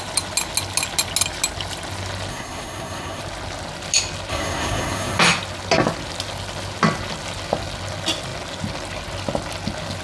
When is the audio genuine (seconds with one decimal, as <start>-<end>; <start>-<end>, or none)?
0.0-2.3; 3.2-4.3; 5.2-10.0